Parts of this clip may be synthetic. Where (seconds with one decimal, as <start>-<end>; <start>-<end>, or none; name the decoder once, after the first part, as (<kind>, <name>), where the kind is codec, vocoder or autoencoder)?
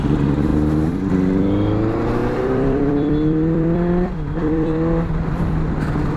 0.5-1.1 (vocoder, BigVGAN v2); 2.2-5.8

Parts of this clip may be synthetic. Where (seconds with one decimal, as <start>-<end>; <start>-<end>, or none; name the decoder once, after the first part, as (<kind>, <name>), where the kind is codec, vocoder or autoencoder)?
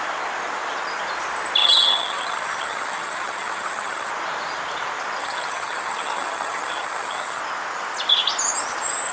1.6-4.1 (vocoder, HiFi-GAN); 5.2-7.4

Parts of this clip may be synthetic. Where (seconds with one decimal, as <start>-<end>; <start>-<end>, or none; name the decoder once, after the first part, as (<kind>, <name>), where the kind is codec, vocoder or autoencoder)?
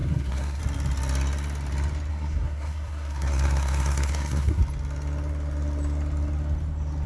0.0-0.6 (codec, SNAC); 2.1-4.6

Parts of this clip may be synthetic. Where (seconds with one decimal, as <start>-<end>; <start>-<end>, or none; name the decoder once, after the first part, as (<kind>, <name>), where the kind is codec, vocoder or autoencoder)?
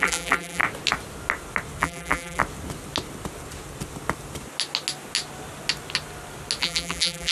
0.0-0.6 (vocoder, BigVGAN v2); 1.8-2.4; 6.6-7.3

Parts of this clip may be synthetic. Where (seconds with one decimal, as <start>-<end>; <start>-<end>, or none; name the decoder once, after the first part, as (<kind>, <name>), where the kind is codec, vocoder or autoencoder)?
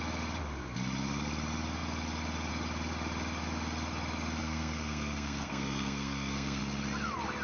4.4-6.6 (codec, SNAC)